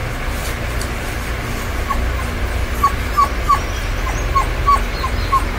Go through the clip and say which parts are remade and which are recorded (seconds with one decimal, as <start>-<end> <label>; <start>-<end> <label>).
0.0-5.6 recorded